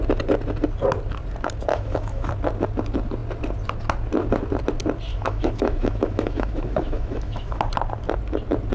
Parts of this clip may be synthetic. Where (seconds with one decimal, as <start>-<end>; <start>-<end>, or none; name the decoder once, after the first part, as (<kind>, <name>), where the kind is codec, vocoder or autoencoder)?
1.7-2.3 (autoencoder, DAC-VAE); 5.1-7.6

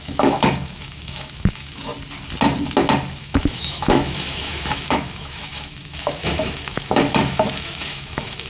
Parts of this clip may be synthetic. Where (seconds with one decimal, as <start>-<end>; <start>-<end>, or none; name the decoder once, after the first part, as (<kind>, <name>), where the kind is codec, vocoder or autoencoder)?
0.0-1.9 (autoencoder, DAC-VAE); 3.2-8.5

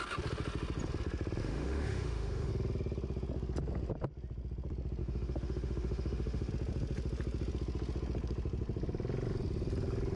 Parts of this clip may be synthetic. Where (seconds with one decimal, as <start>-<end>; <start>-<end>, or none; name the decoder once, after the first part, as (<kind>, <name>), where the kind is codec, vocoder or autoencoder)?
1.4-2.5 (autoencoder, DAC-VAE); 5.0-6.5

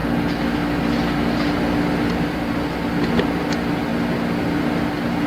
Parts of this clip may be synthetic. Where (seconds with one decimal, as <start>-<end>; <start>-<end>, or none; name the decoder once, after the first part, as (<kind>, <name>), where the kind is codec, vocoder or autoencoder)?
none

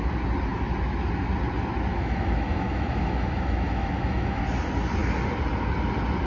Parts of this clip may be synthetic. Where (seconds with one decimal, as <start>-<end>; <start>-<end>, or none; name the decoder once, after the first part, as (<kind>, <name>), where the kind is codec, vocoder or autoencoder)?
1.9-4.4 (autoencoder, DAC-VAE)

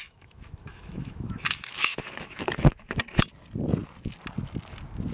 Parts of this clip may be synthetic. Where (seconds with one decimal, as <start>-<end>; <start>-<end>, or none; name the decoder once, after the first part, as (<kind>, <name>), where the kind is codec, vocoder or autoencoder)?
0.0-3.0 (autoencoder, DAC-VAE)

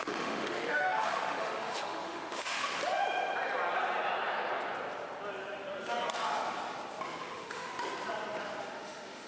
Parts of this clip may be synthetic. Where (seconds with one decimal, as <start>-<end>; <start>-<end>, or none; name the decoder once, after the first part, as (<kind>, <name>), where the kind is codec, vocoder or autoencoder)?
0.0-2.7 (autoencoder, DAC-VAE); 7.2-7.7; 8.6-9.3

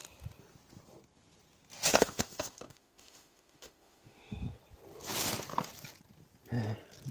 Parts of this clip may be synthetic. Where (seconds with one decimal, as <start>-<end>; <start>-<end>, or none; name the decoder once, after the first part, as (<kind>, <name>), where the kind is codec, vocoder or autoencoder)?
1.9-4.6 (autoencoder, DAC-VAE)